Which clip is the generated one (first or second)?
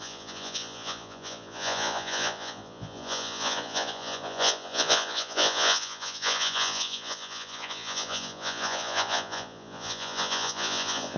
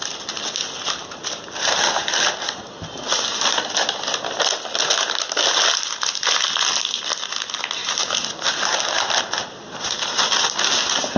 first